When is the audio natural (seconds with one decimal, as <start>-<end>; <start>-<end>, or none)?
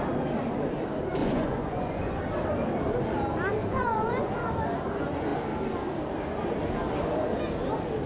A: 0.0-1.2; 2.2-3.6; 4.3-8.1